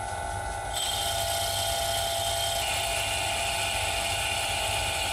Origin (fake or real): real